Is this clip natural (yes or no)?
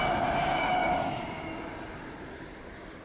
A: yes